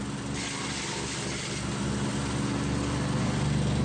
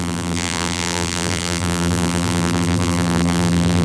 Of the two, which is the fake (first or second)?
second